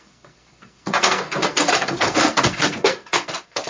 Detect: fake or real fake